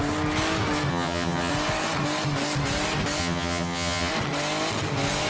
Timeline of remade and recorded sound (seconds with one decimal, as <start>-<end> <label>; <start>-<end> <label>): 0.0-0.9 recorded; 0.9-1.5 remade; 1.5-3.2 recorded; 3.2-4.1 remade; 4.1-5.3 recorded